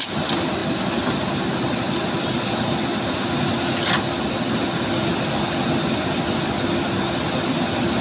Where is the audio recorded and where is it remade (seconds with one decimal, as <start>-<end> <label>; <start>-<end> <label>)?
0.0-8.0 recorded